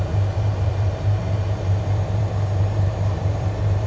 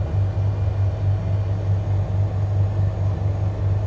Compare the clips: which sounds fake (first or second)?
first